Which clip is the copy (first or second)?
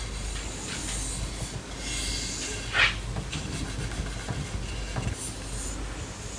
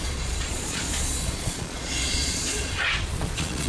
second